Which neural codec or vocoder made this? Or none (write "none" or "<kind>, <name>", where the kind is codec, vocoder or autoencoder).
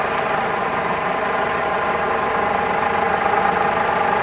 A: none